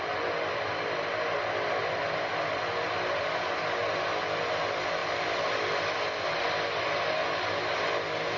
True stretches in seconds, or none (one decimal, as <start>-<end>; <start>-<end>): 0.0-8.4